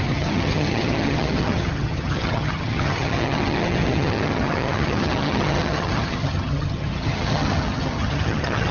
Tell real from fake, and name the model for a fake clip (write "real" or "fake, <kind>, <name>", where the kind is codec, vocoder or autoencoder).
fake, vocoder, HiFi-GAN